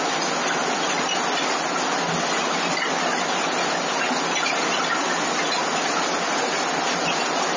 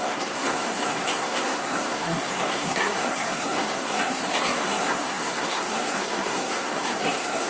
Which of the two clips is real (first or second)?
first